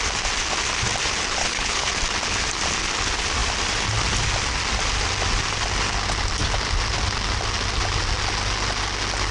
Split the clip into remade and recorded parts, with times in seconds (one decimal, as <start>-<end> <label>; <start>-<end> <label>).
0.0-1.4 recorded; 1.4-1.9 remade; 1.9-9.3 recorded